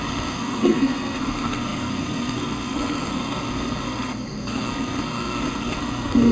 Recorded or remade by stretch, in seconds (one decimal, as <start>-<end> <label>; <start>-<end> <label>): 0.0-6.3 remade